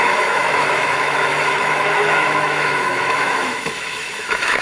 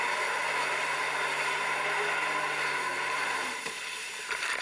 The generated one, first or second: first